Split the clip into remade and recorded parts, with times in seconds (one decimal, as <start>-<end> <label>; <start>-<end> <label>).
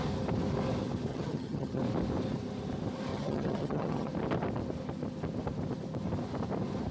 0.0-1.1 recorded; 1.1-1.8 remade; 1.8-3.1 recorded; 3.1-4.1 remade; 4.1-6.9 recorded